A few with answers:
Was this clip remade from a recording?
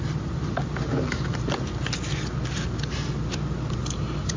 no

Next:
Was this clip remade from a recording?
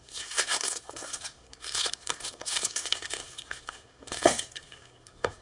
yes